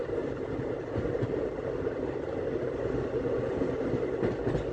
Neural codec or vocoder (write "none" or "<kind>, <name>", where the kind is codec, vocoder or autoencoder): none